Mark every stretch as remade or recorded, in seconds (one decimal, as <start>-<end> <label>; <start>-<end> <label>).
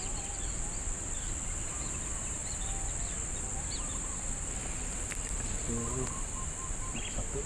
0.0-7.5 recorded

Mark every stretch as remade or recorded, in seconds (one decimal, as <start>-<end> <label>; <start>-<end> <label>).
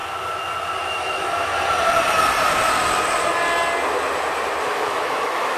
0.0-0.9 recorded; 0.9-1.5 remade; 1.5-4.6 recorded; 4.6-5.6 remade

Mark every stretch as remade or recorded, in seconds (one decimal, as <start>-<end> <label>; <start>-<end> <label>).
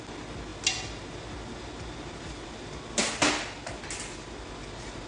0.0-5.1 recorded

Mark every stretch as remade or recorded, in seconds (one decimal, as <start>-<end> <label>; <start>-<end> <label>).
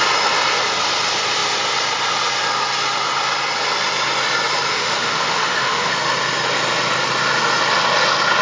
0.0-4.7 recorded; 4.7-5.9 remade; 5.9-8.4 recorded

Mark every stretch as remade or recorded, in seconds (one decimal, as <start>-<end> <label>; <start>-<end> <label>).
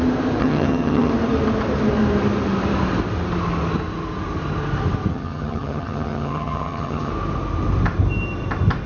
0.0-0.4 recorded; 0.4-1.1 remade; 1.1-5.1 recorded; 5.1-7.1 remade; 7.1-8.9 recorded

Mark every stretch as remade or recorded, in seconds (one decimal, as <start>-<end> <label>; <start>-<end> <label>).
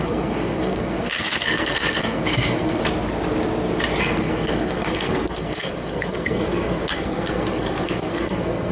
0.0-2.8 remade; 2.8-4.0 recorded; 4.0-8.7 remade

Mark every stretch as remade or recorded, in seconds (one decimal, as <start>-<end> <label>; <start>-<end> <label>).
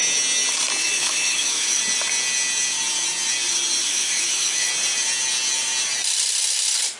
0.0-0.8 recorded; 0.8-1.8 remade; 1.8-3.8 recorded; 3.8-4.7 remade; 4.7-7.0 recorded